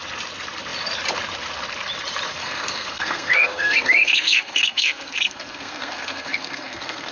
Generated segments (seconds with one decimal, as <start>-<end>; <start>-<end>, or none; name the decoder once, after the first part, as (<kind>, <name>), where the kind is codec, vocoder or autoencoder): 2.4-7.1 (codec, SNAC)